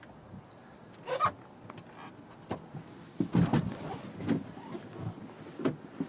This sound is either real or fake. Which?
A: real